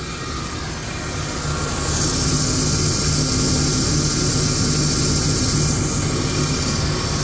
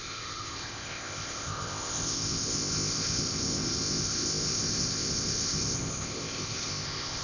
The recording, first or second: first